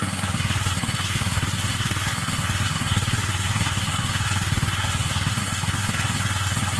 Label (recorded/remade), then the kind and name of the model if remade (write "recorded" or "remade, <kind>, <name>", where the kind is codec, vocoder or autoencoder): remade, codec, SNAC